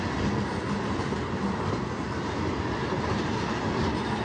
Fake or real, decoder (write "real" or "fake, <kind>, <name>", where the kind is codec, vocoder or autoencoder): real